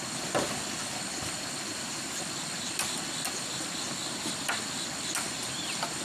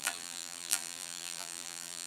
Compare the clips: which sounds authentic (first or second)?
first